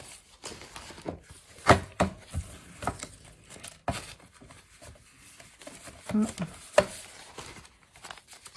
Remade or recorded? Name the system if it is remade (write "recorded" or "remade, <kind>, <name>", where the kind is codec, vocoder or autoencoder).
recorded